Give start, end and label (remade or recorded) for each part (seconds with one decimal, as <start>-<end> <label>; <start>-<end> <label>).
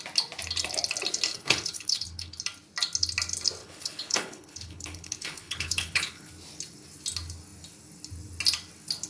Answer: 0.0-1.3 recorded; 1.3-2.4 remade; 2.4-3.6 recorded; 3.6-6.3 remade; 6.3-9.1 recorded